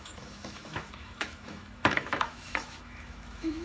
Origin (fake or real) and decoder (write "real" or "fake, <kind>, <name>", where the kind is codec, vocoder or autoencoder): fake, autoencoder, DAC-VAE